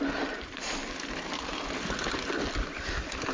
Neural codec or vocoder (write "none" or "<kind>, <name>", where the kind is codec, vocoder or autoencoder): none